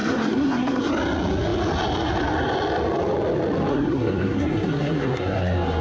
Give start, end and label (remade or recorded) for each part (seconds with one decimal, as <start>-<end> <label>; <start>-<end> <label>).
0.0-0.9 remade; 0.9-3.7 recorded; 3.7-5.8 remade